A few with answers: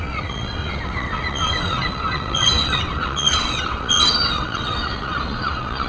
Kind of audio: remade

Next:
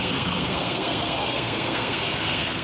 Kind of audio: remade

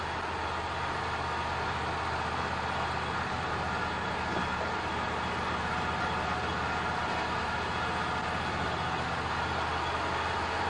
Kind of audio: recorded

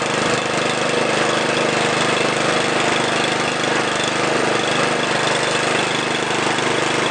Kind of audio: recorded